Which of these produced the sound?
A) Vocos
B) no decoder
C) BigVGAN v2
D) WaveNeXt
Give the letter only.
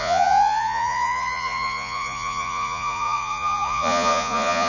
A